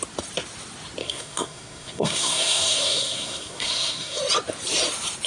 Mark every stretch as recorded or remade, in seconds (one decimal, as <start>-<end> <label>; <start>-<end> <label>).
0.0-1.0 recorded; 1.0-4.2 remade; 4.2-5.3 recorded